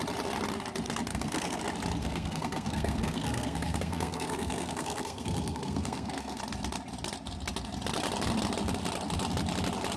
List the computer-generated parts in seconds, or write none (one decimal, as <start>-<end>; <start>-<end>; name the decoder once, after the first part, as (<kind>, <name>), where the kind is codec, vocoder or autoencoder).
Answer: 1.1-1.6 (codec, SNAC); 2.0-6.4